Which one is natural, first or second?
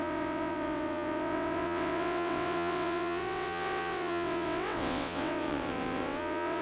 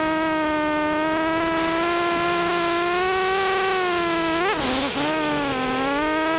second